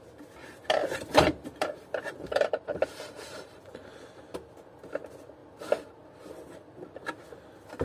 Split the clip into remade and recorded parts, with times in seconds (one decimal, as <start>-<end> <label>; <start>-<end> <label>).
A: 0.0-0.8 recorded; 0.8-4.2 remade; 4.2-7.8 recorded